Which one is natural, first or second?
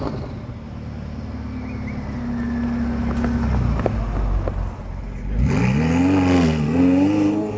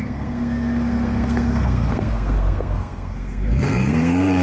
first